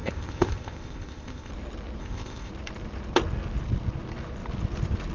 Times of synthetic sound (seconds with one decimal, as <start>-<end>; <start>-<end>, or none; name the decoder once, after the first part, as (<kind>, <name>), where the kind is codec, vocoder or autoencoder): 0.0-1.5 (codec, ZipCodec); 2.0-2.5